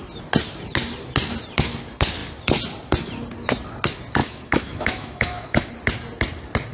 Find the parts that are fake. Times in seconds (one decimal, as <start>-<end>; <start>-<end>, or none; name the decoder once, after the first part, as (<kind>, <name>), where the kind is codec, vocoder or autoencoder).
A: 4.2-5.7 (autoencoder, DAC-VAE)